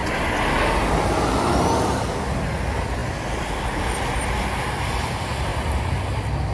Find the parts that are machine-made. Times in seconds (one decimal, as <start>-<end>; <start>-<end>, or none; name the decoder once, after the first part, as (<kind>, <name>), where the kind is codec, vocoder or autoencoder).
none